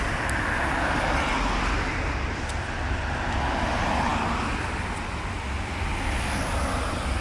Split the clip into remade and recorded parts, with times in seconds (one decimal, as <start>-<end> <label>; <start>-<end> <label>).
0.0-7.2 recorded